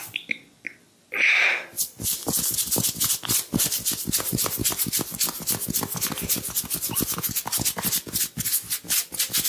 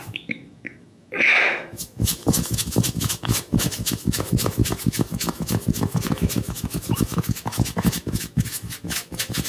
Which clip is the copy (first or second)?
second